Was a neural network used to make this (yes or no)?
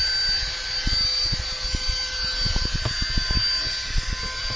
no